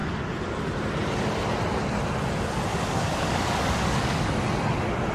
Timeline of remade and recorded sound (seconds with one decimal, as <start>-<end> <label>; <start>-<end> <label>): 0.0-2.7 recorded; 2.7-4.3 remade; 4.3-5.1 recorded